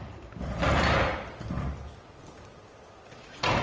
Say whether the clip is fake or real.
real